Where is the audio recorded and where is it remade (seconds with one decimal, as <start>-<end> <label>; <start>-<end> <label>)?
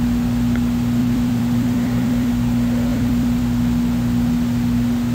0.0-1.0 recorded; 1.0-2.3 remade; 2.3-2.9 recorded; 2.9-3.4 remade; 3.4-5.1 recorded